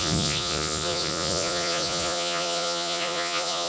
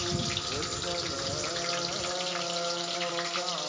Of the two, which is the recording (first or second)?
second